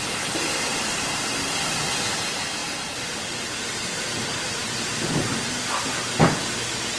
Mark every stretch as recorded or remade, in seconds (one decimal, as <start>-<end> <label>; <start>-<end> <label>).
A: 0.0-7.0 recorded